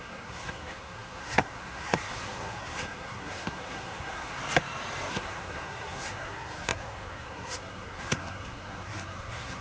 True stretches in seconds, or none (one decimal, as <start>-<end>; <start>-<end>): 4.4-5.1